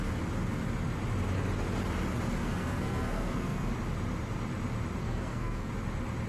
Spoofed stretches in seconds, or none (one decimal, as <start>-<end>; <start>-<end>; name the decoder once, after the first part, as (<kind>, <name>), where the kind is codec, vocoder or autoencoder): 2.4-3.7 (codec, SNAC); 5.0-5.7